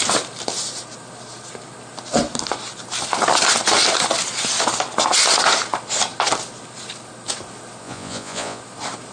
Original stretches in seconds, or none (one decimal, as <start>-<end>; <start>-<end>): 0.0-7.8; 8.6-9.1